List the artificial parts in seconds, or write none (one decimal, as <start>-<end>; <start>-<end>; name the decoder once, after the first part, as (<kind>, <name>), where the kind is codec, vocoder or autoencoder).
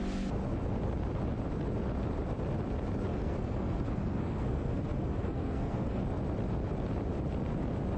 3.1-6.0 (codec, SNAC)